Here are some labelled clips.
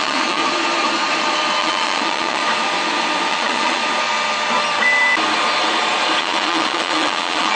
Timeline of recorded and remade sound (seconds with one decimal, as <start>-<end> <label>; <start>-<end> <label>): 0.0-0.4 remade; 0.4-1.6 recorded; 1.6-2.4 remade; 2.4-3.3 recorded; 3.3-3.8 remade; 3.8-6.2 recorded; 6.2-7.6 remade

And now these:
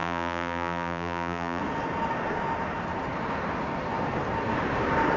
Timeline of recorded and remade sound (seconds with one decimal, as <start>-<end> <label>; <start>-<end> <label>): 0.0-1.6 remade; 1.6-5.2 recorded

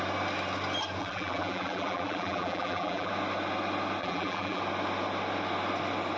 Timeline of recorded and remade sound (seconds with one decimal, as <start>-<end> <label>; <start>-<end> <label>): 0.0-1.0 recorded; 1.0-3.1 remade; 3.1-4.0 recorded; 4.0-4.6 remade; 4.6-6.2 recorded